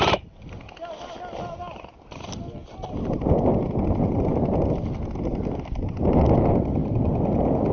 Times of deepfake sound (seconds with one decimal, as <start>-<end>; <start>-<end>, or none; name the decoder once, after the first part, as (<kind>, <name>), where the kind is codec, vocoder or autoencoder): none